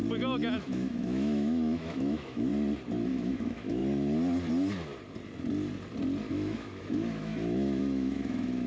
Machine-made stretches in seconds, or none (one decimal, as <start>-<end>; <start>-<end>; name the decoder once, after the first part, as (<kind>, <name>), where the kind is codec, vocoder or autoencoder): 0.6-2.5 (autoencoder, DAC-VAE); 3.1-3.8; 6.3-8.7